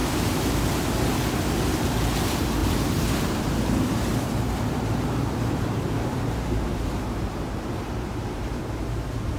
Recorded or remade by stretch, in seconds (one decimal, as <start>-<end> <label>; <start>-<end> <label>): 0.0-0.8 remade; 0.8-2.6 recorded; 2.6-3.4 remade; 3.4-4.1 recorded; 4.1-8.6 remade; 8.6-9.4 recorded